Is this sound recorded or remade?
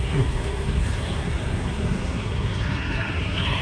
remade